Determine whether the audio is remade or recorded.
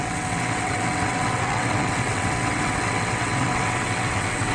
remade